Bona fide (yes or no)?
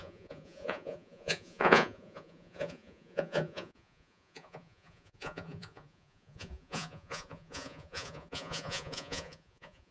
no